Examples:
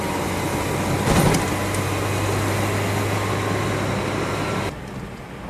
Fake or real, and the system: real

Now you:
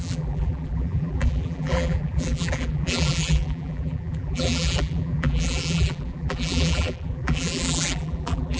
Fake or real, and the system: fake, vocoder, BigVGAN v2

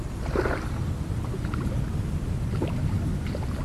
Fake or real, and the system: real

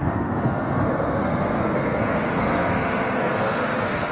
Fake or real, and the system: fake, codec, SNAC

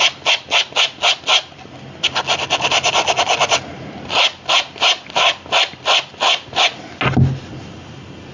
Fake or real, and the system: real